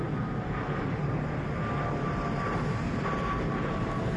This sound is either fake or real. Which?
real